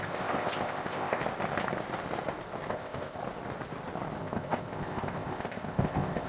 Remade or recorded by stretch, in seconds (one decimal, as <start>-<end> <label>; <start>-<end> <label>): 0.0-1.2 remade; 1.2-2.7 recorded; 2.7-3.2 remade; 3.2-4.2 recorded; 4.2-6.3 remade